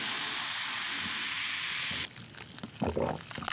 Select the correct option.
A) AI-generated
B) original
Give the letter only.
B